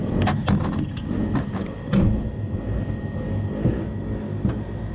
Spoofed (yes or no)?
no